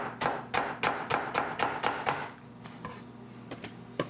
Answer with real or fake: real